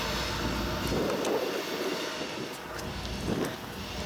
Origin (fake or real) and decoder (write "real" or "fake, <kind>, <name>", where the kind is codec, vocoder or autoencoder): real